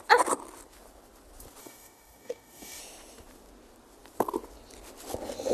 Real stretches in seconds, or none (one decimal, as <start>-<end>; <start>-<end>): 0.0-1.6; 2.8-5.5